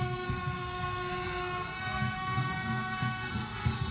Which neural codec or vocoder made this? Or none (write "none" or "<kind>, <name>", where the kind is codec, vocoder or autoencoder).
codec, SNAC